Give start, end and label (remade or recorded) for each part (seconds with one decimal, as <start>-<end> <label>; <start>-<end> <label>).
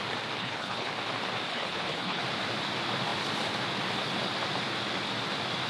0.0-0.4 recorded; 0.4-0.9 remade; 0.9-1.5 recorded; 1.5-2.2 remade; 2.2-5.7 recorded